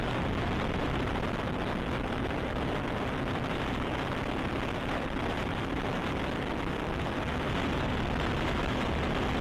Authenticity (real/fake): real